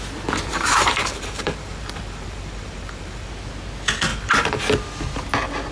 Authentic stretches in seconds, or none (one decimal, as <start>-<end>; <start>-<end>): 0.0-0.5; 3.3-4.1; 4.6-5.7